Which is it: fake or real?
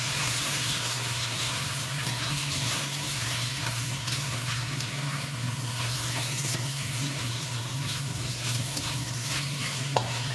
fake